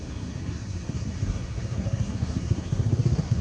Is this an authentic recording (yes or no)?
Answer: no